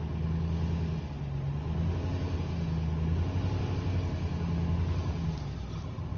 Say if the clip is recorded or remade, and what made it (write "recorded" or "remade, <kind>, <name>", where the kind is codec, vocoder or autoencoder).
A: recorded